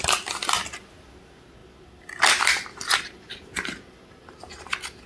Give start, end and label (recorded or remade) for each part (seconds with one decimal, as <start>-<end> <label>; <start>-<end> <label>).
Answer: 0.0-5.1 recorded